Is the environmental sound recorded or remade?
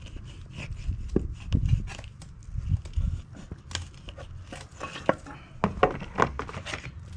recorded